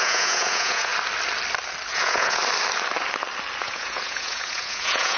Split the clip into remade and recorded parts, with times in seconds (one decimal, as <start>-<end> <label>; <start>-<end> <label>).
0.0-0.9 remade; 0.9-1.9 recorded; 1.9-2.4 remade; 2.4-3.6 recorded; 3.6-5.2 remade